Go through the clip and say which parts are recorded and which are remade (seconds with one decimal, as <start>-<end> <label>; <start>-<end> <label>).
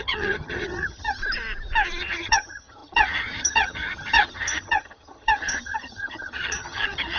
0.0-1.2 remade; 1.2-2.0 recorded; 2.0-7.2 remade